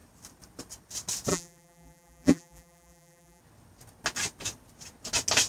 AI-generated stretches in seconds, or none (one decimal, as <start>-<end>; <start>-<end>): 1.3-3.4